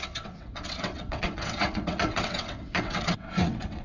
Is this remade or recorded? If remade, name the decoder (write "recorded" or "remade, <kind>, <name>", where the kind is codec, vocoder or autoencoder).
remade, vocoder, WaveNeXt